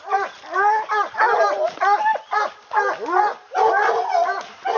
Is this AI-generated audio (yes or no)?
no